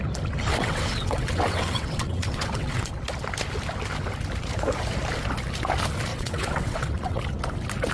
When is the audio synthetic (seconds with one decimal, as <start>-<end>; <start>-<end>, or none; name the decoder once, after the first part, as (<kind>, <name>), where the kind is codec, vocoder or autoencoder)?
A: 0.5-2.9 (vocoder, WaveNeXt); 6.1-7.2